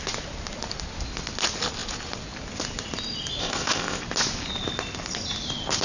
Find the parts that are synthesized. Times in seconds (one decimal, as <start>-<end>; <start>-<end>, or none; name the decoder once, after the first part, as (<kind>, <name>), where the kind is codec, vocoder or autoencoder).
3.4-4.0 (codec, ZipCodec)